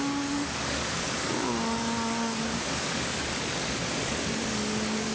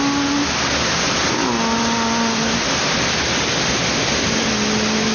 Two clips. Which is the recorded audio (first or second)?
second